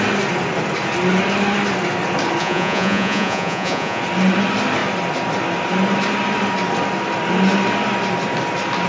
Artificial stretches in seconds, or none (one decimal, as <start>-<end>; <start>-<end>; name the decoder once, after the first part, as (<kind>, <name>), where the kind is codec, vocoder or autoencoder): 2.4-4.0 (vocoder, Vocos)